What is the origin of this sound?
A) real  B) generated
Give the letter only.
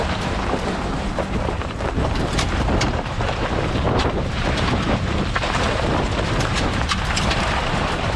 B